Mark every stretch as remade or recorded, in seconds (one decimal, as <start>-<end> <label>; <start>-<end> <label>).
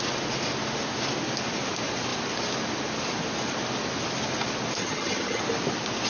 0.0-4.8 recorded; 4.8-5.4 remade; 5.4-6.1 recorded